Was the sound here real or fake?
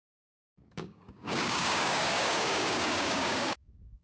fake